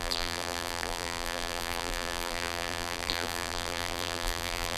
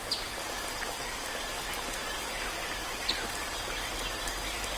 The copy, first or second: first